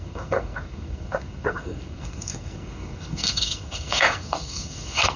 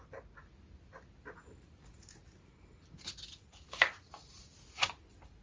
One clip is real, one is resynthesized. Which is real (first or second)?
second